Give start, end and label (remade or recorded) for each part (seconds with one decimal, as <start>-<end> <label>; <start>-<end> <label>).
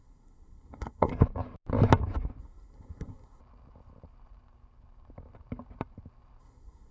0.0-1.1 remade; 1.1-2.4 recorded; 2.4-3.4 remade; 3.4-6.4 recorded; 6.4-6.9 remade